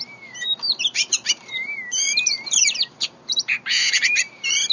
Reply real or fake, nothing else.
fake